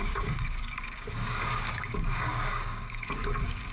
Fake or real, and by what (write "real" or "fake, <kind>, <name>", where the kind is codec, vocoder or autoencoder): fake, codec, DAC